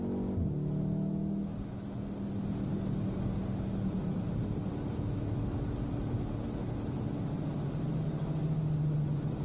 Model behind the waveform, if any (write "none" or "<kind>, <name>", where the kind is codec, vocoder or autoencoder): none